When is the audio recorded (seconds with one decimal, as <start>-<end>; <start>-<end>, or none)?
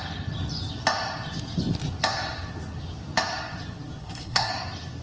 0.0-4.0; 4.5-5.0